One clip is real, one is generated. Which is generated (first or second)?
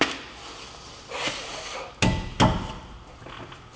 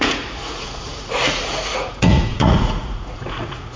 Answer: second